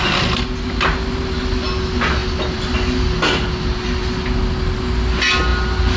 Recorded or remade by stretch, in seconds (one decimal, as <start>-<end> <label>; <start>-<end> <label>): 0.0-6.0 recorded